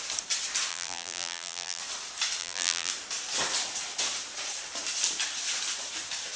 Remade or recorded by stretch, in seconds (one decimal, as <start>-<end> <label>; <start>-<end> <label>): 0.0-0.7 recorded; 0.7-1.8 remade; 1.8-2.4 recorded; 2.4-2.9 remade; 2.9-6.4 recorded